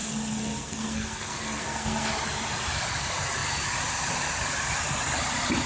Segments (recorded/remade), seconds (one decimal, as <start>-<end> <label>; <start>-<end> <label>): 0.0-2.1 remade; 2.1-5.7 recorded